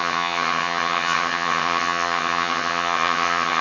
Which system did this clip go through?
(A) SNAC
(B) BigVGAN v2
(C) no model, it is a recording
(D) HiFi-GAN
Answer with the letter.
D